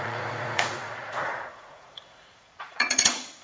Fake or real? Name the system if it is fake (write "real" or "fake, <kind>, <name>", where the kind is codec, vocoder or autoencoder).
fake, vocoder, Vocos